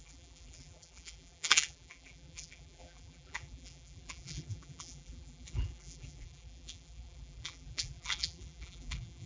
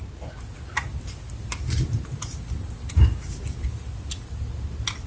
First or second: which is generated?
first